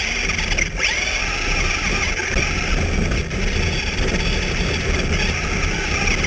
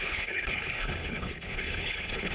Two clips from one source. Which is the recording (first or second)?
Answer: first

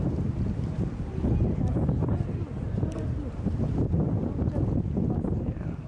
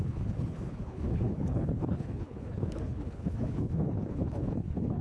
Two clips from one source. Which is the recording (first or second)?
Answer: first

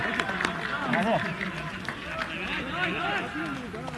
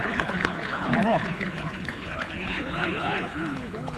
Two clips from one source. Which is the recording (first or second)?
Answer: first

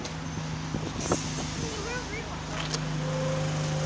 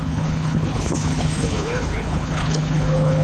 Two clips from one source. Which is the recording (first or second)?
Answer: first